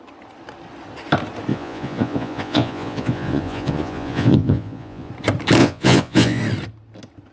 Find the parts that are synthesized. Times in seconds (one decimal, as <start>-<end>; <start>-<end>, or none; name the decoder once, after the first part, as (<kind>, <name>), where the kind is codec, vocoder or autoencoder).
1.5-5.1 (vocoder, Vocos); 5.6-6.4